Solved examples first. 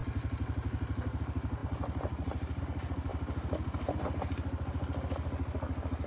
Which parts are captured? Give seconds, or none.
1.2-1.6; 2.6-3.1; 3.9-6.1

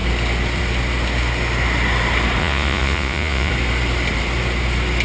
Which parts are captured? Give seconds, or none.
0.0-2.4; 3.5-5.0

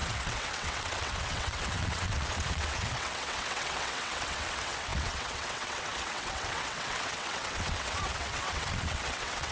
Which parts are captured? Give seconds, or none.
none